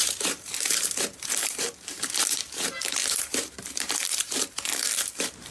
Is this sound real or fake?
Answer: fake